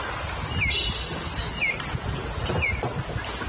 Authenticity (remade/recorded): recorded